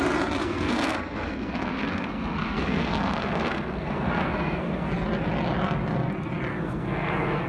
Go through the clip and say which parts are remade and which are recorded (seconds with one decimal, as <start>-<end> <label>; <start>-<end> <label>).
0.0-0.4 recorded; 0.4-4.9 remade; 4.9-6.5 recorded; 6.5-7.5 remade